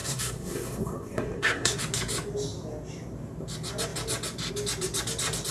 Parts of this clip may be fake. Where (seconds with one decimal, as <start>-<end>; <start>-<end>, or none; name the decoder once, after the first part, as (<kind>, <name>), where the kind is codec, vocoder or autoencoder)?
0.0-1.8 (codec, SNAC)